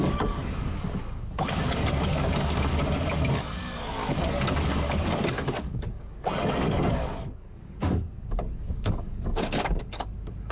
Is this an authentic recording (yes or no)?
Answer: no